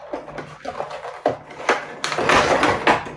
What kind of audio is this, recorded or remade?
recorded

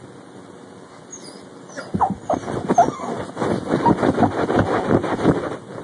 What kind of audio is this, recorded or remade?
recorded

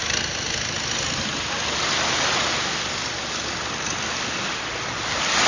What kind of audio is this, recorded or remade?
recorded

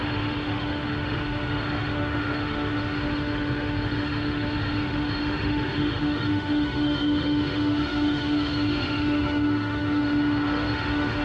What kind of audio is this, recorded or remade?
remade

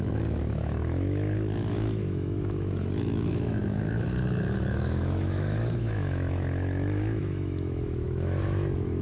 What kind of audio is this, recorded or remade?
remade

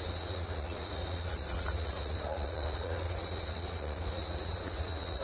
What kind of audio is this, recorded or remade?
remade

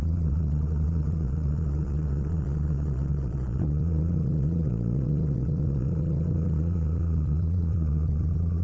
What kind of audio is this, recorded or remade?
remade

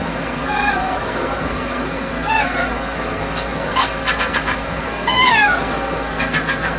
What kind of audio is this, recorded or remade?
remade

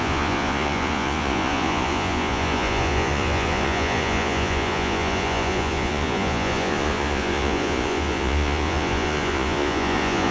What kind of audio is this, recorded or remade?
remade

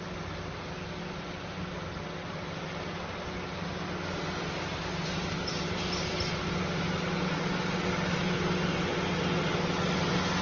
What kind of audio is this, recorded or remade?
recorded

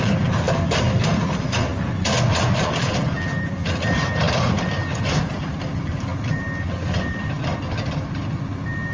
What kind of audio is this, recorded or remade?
recorded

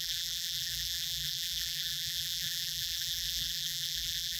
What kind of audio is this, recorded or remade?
remade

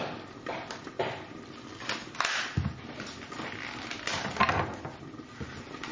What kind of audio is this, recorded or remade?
recorded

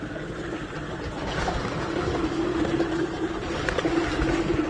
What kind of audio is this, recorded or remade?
recorded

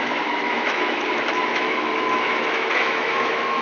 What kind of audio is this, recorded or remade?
remade